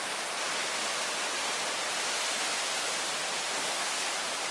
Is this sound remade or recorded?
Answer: recorded